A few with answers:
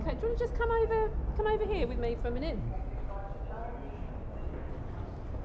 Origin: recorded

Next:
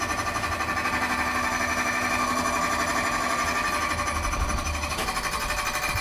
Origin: recorded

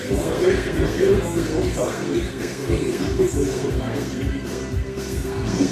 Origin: remade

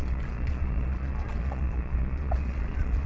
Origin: remade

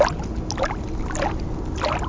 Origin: recorded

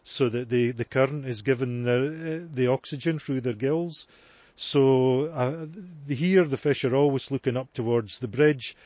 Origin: recorded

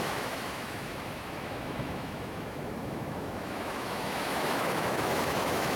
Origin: remade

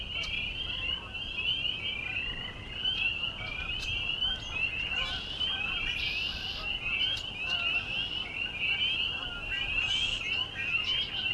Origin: recorded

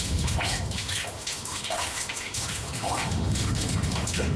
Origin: remade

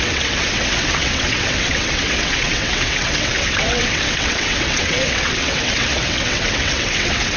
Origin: remade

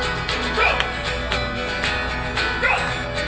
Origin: recorded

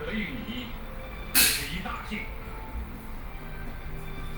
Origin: recorded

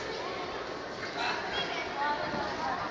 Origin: recorded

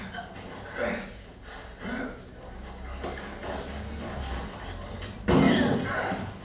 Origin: recorded